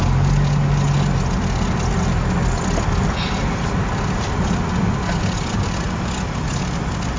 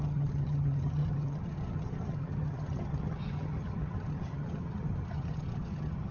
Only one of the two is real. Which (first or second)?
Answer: first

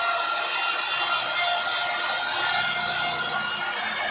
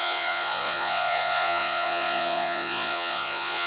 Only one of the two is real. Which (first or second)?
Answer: first